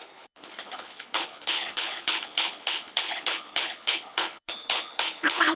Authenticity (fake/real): fake